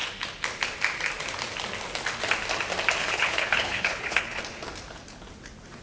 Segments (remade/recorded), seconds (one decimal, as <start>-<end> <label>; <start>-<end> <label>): 0.0-3.0 recorded; 3.0-4.4 remade; 4.4-5.8 recorded